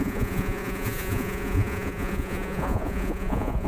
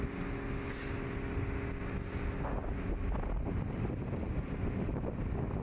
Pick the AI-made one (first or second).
first